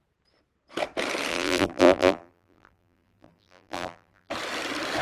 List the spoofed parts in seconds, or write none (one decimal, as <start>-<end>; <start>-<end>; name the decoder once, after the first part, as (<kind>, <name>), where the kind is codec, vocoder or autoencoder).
1.3-4.3 (vocoder, BigVGAN v2)